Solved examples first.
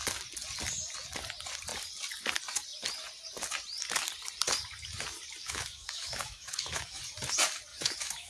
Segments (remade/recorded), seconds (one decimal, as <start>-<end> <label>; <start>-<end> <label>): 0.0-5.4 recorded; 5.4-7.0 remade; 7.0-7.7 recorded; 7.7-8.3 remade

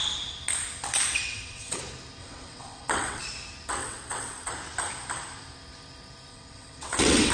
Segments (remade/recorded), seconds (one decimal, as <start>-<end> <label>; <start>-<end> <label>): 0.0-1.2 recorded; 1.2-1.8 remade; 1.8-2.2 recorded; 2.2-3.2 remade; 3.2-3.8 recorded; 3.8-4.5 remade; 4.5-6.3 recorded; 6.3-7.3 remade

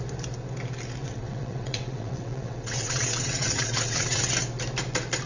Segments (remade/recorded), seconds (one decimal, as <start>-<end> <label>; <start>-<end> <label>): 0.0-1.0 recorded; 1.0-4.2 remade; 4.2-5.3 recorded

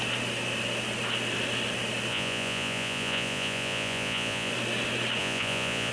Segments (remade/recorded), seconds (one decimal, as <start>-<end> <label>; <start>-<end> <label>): 0.0-2.1 recorded; 2.1-4.5 remade; 4.5-5.2 recorded; 5.2-5.9 remade